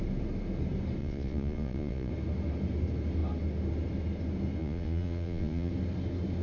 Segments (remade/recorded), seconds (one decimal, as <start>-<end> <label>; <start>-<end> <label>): 0.0-1.0 recorded; 1.0-2.1 remade; 2.1-4.6 recorded; 4.6-5.7 remade; 5.7-6.4 recorded